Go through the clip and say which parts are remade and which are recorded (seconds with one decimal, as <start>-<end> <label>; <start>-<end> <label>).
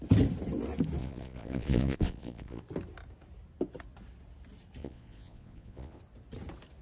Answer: 0.0-1.0 recorded; 1.0-2.6 remade; 2.6-4.8 recorded; 4.8-6.0 remade; 6.0-6.8 recorded